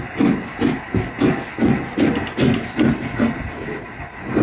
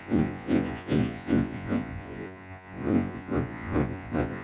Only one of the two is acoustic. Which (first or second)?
first